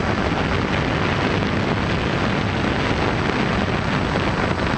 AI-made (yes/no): no